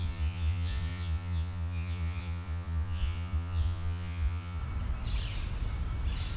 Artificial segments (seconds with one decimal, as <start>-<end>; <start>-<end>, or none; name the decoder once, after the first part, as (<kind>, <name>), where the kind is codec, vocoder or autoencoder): 0.0-4.6 (vocoder, Vocos)